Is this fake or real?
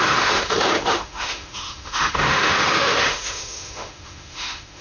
fake